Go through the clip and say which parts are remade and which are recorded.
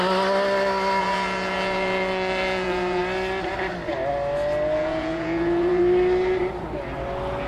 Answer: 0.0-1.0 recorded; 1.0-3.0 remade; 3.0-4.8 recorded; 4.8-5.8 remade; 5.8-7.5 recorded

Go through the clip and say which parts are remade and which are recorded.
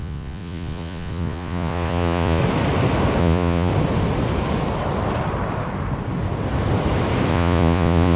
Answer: 0.0-2.4 remade; 2.4-3.2 recorded; 3.2-3.7 remade; 3.7-7.3 recorded; 7.3-8.2 remade